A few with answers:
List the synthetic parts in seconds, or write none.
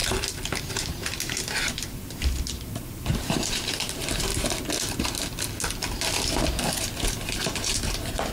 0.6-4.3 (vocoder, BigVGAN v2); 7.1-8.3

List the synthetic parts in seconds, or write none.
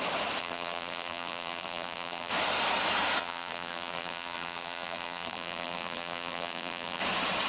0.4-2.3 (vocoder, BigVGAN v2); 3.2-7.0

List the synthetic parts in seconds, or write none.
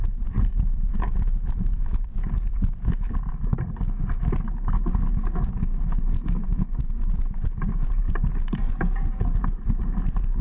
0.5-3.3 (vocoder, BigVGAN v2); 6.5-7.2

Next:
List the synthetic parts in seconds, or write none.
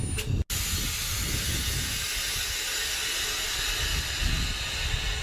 none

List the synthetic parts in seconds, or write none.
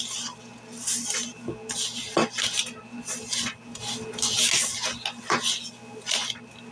none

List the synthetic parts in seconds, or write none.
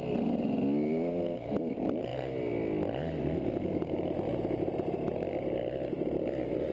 0.0-2.1 (vocoder, BigVGAN v2); 3.2-6.7